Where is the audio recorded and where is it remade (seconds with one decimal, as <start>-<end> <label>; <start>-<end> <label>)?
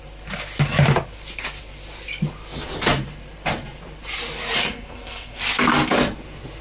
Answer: 0.0-4.6 recorded; 4.6-5.4 remade; 5.4-6.6 recorded